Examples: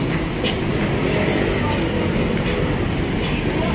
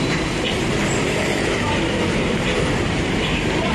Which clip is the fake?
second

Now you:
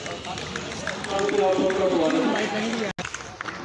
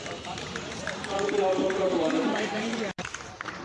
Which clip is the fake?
second